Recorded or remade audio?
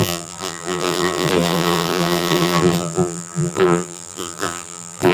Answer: remade